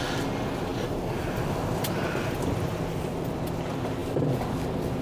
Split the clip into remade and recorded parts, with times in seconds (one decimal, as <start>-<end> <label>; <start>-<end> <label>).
0.0-0.7 recorded; 0.7-3.4 remade; 3.4-5.0 recorded